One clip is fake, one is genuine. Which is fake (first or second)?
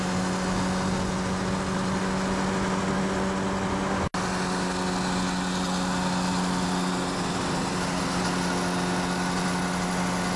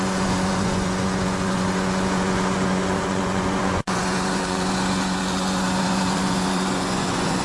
second